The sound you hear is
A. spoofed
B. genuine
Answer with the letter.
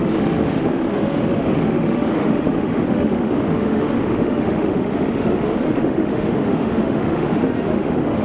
A